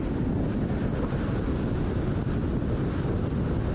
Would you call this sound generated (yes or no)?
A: no